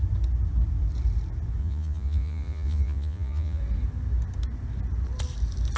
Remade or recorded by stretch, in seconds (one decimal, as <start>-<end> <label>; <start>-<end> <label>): 0.0-1.6 recorded; 1.6-3.6 remade; 3.6-5.8 recorded